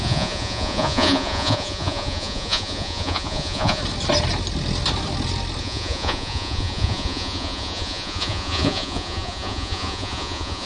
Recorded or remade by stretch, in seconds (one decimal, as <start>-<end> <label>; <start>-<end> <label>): 0.0-3.8 remade; 3.8-5.6 recorded; 5.6-10.7 remade